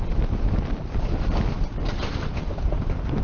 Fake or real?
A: real